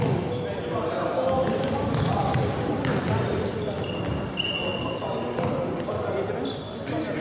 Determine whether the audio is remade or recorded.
recorded